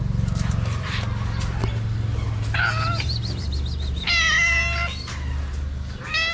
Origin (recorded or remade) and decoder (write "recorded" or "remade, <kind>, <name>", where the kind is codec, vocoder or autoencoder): recorded